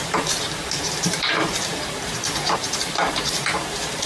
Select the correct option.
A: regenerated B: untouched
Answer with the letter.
A